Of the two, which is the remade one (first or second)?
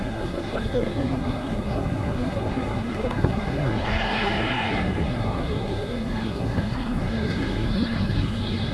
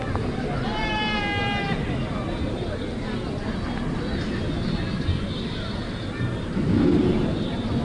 first